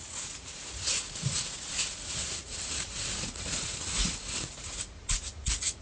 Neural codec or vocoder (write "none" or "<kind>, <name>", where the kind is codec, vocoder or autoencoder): vocoder, Vocos